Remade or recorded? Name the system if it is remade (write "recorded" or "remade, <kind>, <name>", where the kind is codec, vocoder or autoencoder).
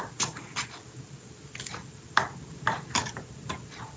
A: recorded